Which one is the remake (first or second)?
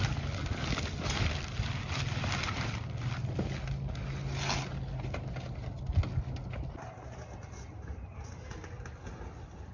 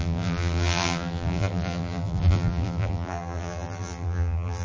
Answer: second